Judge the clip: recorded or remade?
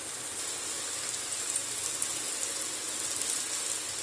recorded